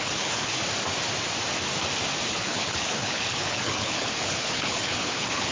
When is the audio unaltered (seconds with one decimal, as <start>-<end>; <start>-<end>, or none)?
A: 0.6-2.3